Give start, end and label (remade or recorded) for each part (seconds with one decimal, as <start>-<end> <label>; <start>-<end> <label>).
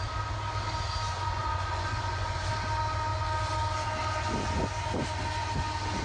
0.0-1.1 recorded; 1.1-2.5 remade; 2.5-6.0 recorded